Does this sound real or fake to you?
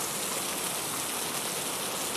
real